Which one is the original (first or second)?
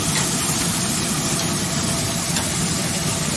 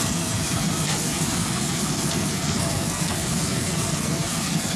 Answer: first